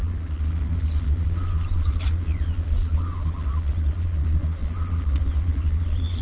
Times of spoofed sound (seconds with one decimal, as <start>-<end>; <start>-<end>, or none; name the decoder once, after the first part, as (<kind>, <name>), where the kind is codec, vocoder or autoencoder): 0.0-6.2 (vocoder, Vocos)